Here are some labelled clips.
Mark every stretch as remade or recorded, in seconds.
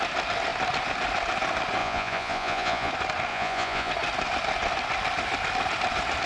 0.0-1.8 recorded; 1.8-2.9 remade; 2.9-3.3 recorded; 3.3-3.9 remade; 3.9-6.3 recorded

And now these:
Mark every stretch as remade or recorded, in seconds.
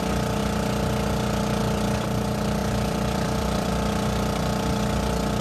0.0-2.6 recorded; 2.6-3.7 remade; 3.7-5.4 recorded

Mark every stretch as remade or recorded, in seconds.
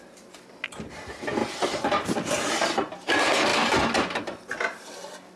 0.0-5.4 recorded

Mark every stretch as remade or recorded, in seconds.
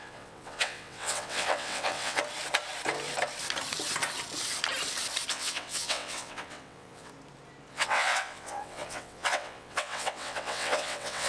0.0-2.2 remade; 2.2-5.3 recorded; 5.3-7.1 remade; 7.1-7.7 recorded; 7.7-11.3 remade